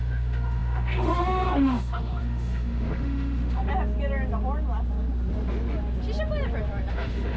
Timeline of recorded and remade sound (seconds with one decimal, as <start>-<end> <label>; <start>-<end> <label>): 0.0-3.7 remade; 3.7-6.9 recorded; 6.9-7.4 remade